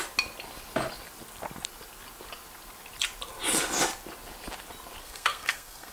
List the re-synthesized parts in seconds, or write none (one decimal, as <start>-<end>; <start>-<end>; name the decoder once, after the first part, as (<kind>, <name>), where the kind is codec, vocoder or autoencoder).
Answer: 5.0-5.9 (codec, SNAC)